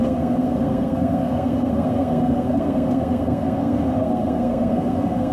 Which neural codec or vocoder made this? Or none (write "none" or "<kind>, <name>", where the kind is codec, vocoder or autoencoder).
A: codec, SNAC